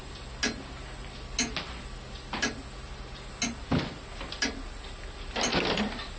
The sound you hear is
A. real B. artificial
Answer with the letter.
A